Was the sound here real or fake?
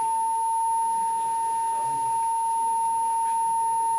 real